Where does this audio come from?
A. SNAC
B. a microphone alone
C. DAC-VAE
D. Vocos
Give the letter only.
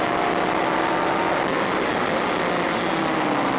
B